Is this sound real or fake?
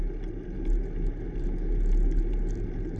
real